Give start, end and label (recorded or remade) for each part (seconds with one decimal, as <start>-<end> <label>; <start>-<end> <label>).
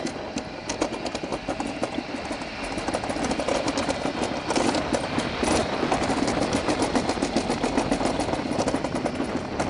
0.0-9.7 recorded